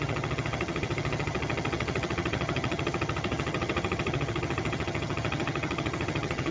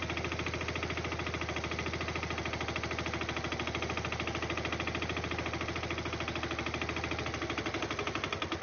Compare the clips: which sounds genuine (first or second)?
second